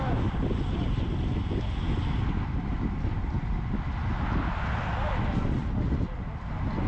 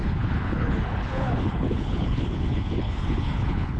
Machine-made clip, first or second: second